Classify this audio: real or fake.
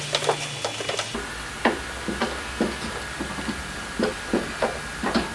real